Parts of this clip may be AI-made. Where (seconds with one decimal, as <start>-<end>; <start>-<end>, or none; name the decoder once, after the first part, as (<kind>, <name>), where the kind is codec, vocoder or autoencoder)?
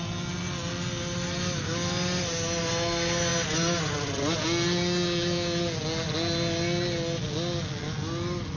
none